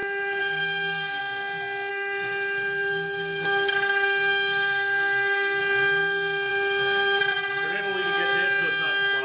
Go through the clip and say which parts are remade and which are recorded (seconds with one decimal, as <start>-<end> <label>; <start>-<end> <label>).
0.0-1.2 remade; 1.2-1.9 recorded; 1.9-5.6 remade; 5.6-6.5 recorded; 6.5-7.2 remade; 7.2-9.2 recorded